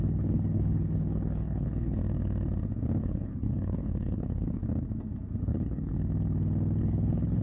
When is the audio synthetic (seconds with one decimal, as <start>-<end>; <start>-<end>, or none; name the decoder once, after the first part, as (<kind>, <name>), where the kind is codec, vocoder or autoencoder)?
0.0-2.0 (codec, HILCodec); 3.0-4.6; 5.4-5.9; 6.8-7.4